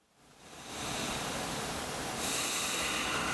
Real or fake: fake